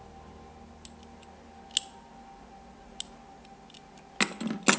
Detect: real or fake real